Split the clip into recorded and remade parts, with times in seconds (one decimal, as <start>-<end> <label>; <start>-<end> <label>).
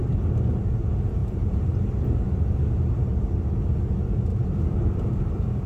0.0-1.2 recorded; 1.2-1.9 remade; 1.9-4.3 recorded; 4.3-5.7 remade